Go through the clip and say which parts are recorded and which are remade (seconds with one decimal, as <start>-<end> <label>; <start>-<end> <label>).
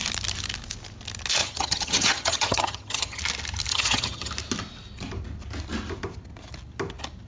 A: 0.0-1.4 recorded; 1.4-3.2 remade; 3.2-3.7 recorded; 3.7-4.3 remade; 4.3-7.3 recorded